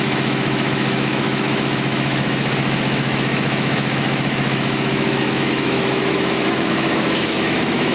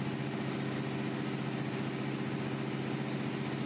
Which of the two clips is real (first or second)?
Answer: second